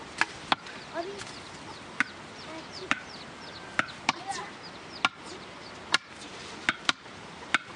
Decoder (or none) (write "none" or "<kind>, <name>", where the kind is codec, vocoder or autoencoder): none